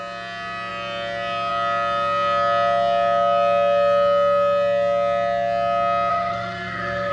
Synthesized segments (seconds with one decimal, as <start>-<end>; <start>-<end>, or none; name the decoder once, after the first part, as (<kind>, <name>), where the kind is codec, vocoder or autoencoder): 6.1-7.1 (codec, SNAC)